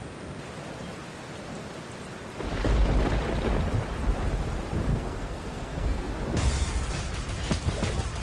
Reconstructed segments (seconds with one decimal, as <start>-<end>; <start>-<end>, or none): 4.9-6.1